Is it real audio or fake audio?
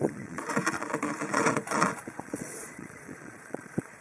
fake